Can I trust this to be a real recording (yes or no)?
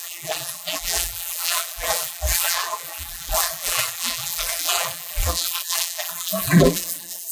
no